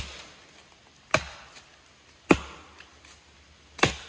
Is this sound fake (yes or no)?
no